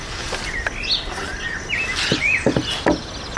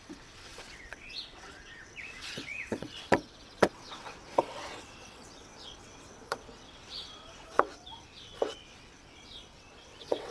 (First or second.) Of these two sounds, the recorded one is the first